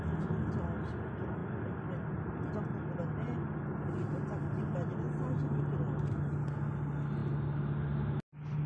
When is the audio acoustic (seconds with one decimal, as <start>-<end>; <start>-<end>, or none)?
0.0-8.7